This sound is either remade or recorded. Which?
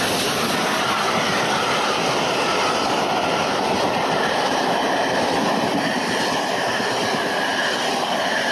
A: recorded